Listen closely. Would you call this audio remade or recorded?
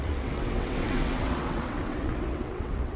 remade